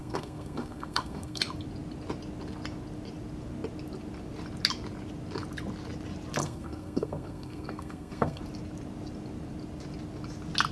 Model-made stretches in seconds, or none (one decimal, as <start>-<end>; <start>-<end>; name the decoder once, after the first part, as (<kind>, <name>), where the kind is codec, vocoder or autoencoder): 0.0-1.4 (codec, SNAC); 6.4-8.4